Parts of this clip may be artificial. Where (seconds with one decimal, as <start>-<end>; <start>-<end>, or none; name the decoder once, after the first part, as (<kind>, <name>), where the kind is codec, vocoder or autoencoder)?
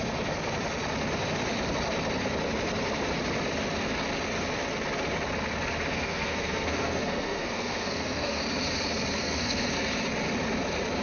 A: 5.9-8.4 (codec, SNAC); 9.2-9.7